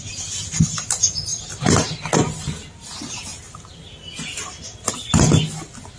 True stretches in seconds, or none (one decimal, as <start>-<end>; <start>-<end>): 0.0-6.0